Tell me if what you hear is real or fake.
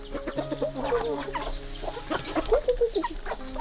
real